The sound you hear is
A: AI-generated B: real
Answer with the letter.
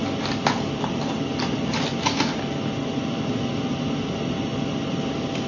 B